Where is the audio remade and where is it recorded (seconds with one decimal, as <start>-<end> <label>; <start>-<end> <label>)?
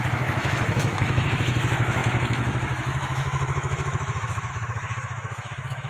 0.0-5.9 remade